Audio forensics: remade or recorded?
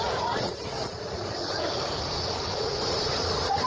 remade